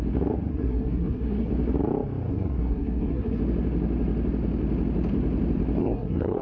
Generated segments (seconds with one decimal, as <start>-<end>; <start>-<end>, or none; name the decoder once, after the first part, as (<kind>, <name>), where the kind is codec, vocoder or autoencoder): 0.5-1.5 (codec, SNAC); 2.3-3.4; 5.8-6.4